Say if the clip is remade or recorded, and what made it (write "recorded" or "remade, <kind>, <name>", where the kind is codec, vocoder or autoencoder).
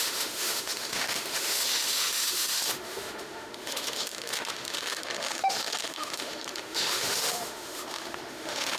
remade, autoencoder, DAC-VAE